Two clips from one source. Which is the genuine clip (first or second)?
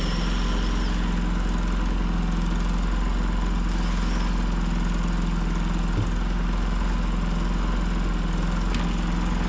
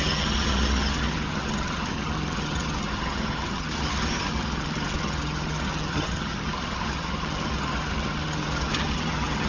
first